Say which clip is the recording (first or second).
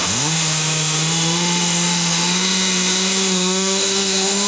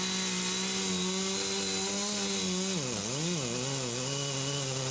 second